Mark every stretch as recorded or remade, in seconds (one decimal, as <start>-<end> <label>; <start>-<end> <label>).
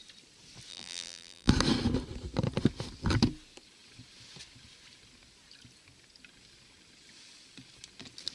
0.0-0.7 recorded; 0.7-1.5 remade; 1.5-8.3 recorded